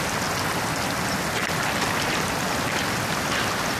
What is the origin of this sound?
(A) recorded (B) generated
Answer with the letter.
A